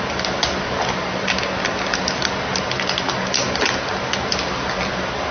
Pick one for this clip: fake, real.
real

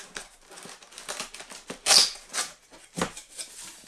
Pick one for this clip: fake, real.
real